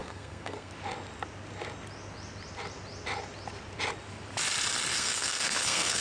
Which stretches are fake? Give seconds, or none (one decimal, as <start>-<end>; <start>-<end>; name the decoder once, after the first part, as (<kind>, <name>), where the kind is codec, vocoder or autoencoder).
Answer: 0.0-0.7 (codec, SNAC); 4.9-6.0